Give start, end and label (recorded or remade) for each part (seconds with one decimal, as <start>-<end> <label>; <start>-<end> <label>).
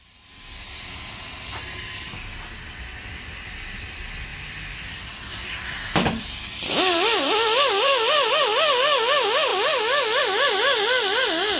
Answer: 0.0-4.3 recorded; 4.3-8.3 remade; 8.3-11.6 recorded